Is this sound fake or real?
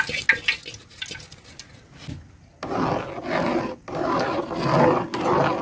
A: real